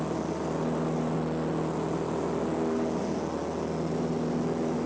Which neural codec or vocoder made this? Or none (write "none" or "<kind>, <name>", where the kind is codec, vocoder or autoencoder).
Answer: none